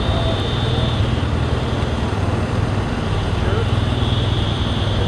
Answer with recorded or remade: recorded